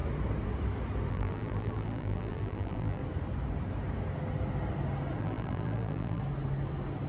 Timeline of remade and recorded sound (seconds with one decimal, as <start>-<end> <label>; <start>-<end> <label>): 0.0-1.1 recorded; 1.1-3.0 remade; 3.0-5.2 recorded; 5.2-6.2 remade; 6.2-7.1 recorded